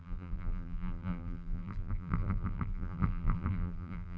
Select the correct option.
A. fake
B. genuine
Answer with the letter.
A